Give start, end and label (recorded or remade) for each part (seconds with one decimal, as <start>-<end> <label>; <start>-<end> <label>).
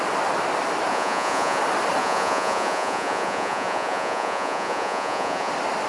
0.0-0.9 recorded; 0.9-1.6 remade; 1.6-2.0 recorded; 2.0-5.5 remade; 5.5-5.9 recorded